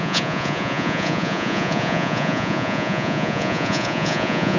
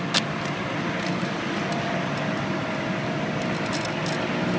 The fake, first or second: first